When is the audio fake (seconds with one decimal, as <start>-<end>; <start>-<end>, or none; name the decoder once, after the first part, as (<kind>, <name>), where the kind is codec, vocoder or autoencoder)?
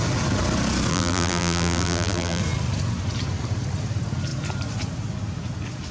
0.9-2.4 (vocoder, BigVGAN v2)